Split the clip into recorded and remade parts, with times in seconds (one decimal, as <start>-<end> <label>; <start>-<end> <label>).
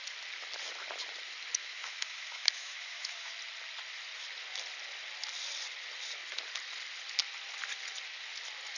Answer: 0.0-1.6 recorded; 1.6-3.3 remade; 3.3-8.8 recorded